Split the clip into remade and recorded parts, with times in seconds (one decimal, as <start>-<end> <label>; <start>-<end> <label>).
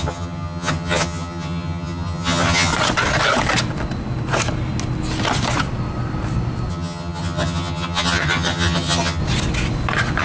0.0-2.7 remade; 2.7-6.7 recorded; 6.7-9.2 remade; 9.2-10.2 recorded